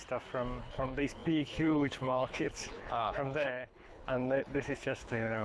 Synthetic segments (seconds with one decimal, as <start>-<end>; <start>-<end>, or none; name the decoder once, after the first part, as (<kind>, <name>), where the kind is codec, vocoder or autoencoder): 0.6-5.4 (codec, HILCodec)